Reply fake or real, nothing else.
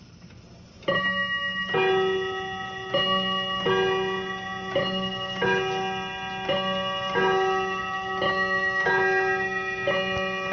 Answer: real